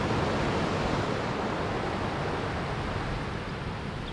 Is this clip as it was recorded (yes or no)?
yes